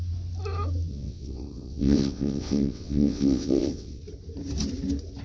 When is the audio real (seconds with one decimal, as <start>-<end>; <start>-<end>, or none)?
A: 0.0-0.9; 4.0-5.2